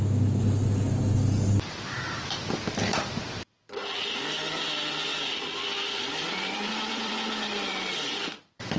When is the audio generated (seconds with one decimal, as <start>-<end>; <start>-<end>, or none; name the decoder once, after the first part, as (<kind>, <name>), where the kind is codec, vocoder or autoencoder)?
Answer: 5.1-7.1 (vocoder, BigVGAN v2)